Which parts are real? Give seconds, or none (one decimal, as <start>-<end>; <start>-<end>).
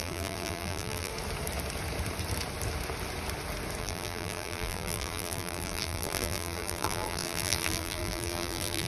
1.1-3.8